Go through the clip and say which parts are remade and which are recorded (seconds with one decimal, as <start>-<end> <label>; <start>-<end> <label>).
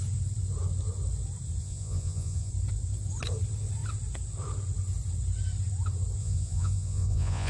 0.0-1.6 recorded; 1.6-2.5 remade; 2.5-6.2 recorded; 6.2-7.5 remade